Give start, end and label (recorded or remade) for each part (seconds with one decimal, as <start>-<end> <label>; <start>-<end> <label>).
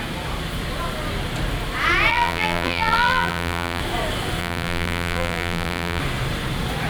0.0-2.1 recorded; 2.1-3.8 remade; 3.8-4.4 recorded; 4.4-6.0 remade; 6.0-6.9 recorded